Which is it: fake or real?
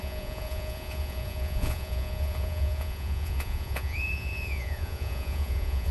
fake